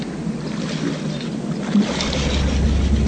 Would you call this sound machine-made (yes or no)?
no